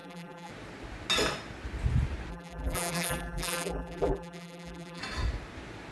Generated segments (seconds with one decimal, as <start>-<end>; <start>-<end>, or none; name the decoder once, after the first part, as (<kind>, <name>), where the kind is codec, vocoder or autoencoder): 0.0-0.5 (vocoder, BigVGAN v2); 2.3-5.0

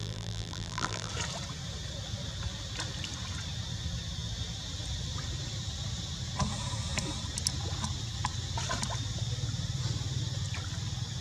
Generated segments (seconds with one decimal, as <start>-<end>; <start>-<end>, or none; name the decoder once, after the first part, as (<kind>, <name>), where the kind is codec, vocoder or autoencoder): 0.0-1.1 (vocoder, BigVGAN v2)

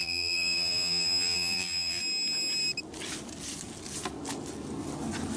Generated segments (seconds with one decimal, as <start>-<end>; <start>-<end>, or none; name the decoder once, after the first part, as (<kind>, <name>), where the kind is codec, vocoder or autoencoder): 0.0-2.0 (vocoder, BigVGAN v2)

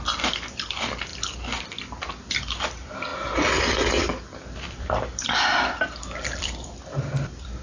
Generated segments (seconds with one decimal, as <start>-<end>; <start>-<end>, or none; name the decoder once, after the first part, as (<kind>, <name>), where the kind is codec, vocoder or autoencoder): 0.0-1.1 (vocoder, BigVGAN v2); 2.4-3.1; 3.6-7.6

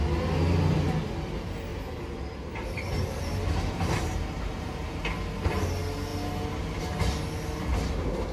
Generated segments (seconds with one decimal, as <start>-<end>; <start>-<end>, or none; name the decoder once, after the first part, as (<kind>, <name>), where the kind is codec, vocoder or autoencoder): 1.7-5.1 (vocoder, BigVGAN v2)